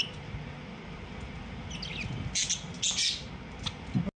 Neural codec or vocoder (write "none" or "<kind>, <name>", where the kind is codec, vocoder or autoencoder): none